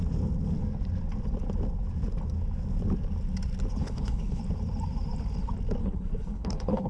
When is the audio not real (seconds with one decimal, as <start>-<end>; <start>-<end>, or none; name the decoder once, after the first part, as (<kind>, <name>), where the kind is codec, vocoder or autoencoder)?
3.8-4.4 (codec, HILCodec); 5.8-6.9